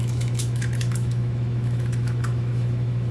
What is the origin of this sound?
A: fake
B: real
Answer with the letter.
A